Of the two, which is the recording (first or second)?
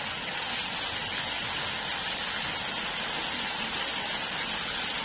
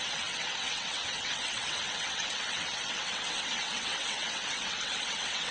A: first